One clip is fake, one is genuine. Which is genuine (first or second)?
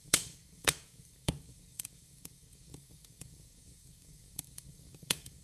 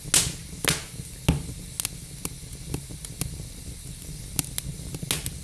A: second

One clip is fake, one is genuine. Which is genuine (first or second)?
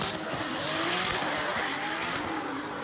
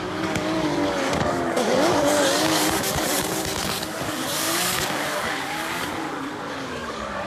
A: first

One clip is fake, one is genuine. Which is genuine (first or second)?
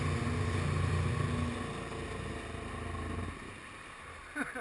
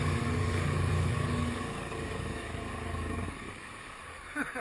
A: first